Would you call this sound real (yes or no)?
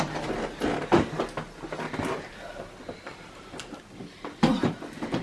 yes